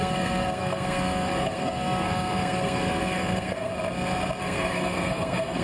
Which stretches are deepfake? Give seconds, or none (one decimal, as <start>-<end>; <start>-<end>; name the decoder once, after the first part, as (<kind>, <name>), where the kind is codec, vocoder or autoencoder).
0.0-3.7 (codec, SNAC); 4.4-5.6